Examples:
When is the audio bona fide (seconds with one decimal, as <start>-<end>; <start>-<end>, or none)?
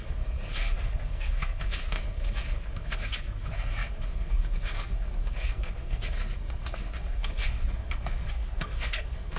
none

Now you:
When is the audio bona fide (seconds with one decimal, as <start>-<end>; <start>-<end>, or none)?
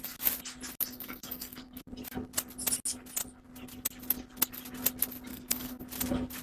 0.0-0.9; 1.9-5.3; 5.8-6.4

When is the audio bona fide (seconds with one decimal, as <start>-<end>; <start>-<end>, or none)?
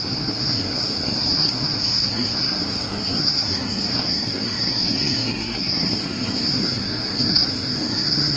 none